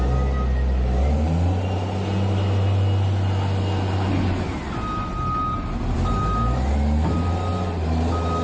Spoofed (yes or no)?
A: no